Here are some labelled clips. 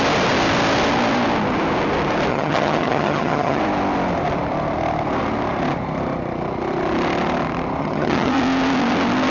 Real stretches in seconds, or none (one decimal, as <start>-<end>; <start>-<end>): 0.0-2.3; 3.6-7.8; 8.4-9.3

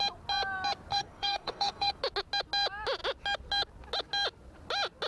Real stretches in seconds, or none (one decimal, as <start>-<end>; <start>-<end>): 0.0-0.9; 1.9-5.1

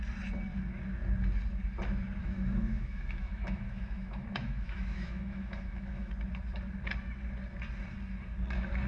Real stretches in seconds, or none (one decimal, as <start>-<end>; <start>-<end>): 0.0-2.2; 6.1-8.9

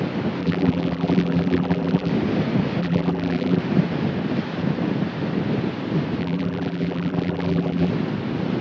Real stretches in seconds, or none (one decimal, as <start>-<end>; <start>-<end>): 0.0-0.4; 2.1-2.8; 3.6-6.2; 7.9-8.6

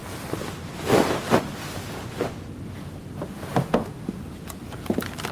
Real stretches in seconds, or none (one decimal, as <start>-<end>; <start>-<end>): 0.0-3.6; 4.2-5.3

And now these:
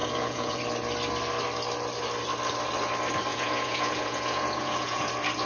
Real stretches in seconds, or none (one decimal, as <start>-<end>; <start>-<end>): 0.6-3.3; 5.1-5.5

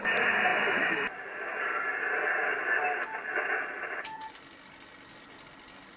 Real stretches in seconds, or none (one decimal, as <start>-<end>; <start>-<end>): 0.0-6.0